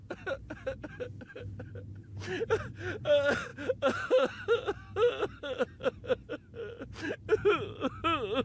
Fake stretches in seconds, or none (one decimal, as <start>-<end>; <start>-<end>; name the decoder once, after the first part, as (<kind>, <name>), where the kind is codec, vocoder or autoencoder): none